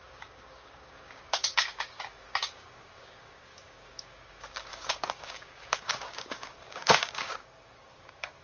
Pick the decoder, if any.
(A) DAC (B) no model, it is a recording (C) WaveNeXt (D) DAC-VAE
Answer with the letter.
A